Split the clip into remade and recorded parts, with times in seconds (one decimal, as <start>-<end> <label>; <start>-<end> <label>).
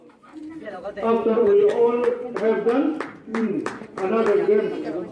0.0-0.4 recorded; 0.4-1.7 remade; 1.7-3.3 recorded; 3.3-4.1 remade; 4.1-5.1 recorded